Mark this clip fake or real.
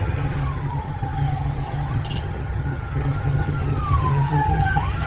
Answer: fake